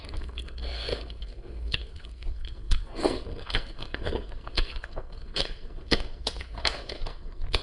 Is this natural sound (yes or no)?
no